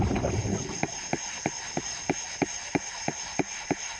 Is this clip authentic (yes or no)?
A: yes